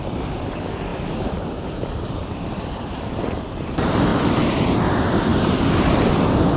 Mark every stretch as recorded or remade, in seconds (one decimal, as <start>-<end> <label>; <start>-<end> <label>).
0.0-4.1 remade; 4.1-4.8 recorded; 4.8-5.3 remade; 5.3-5.8 recorded; 5.8-6.6 remade